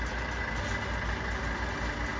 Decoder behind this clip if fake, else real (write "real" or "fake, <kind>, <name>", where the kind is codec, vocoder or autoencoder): real